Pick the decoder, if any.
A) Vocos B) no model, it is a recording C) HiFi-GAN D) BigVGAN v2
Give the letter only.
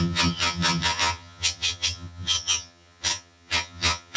C